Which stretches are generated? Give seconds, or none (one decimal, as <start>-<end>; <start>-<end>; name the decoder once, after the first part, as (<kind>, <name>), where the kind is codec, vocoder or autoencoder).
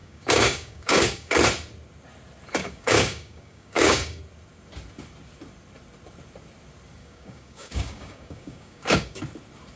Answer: 0.0-1.4 (codec, DAC); 2.6-4.2; 7.0-9.2